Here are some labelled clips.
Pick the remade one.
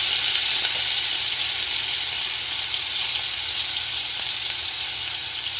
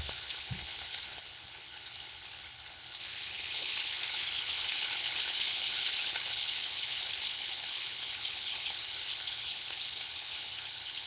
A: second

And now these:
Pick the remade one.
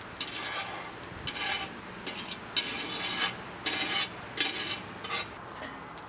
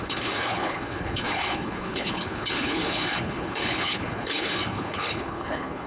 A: second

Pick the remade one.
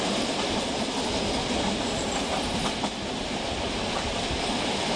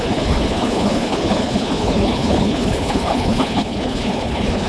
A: second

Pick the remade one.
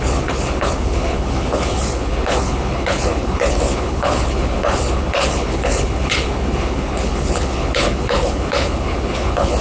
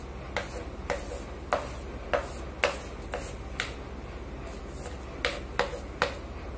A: first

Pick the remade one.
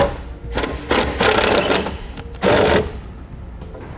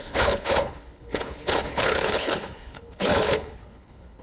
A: second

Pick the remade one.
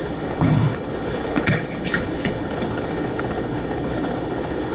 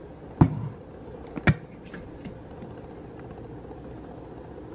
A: first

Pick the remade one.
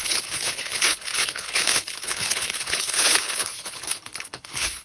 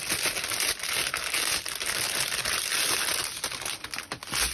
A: first